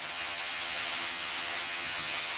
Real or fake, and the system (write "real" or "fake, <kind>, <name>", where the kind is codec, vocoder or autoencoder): fake, vocoder, HiFi-GAN